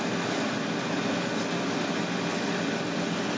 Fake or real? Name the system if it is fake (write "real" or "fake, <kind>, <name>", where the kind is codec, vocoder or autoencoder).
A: real